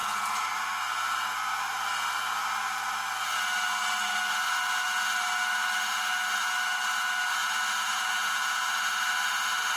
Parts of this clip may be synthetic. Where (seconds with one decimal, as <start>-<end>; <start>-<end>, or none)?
0.0-0.5; 7.4-8.6